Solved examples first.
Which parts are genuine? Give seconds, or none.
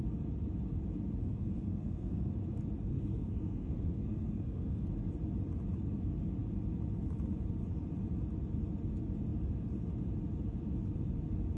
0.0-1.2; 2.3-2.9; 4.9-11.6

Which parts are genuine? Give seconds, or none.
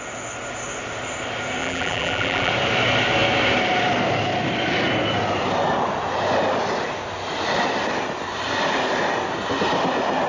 0.0-1.6; 2.5-10.3